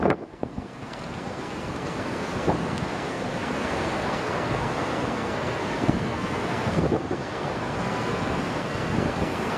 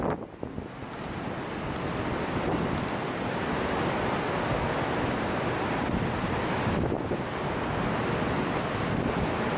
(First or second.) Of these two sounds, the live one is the second